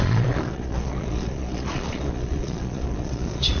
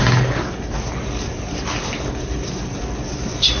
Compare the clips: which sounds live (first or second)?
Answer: second